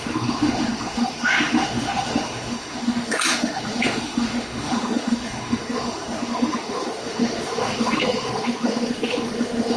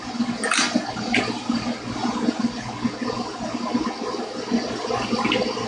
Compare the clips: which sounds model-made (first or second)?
first